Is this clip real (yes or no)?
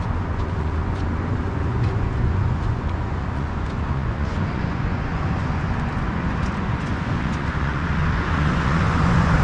no